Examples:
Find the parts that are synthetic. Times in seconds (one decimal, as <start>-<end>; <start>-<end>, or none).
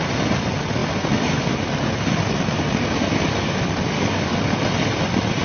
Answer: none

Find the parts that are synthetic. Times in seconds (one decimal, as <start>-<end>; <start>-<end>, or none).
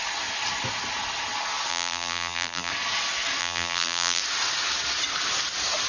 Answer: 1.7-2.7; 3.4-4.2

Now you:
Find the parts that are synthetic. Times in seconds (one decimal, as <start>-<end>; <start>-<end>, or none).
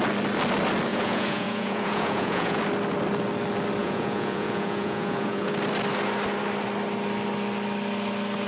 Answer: 0.9-2.6; 3.8-5.5